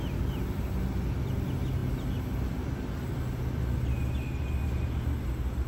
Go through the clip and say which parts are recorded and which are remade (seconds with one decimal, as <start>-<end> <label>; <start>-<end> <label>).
0.0-5.7 recorded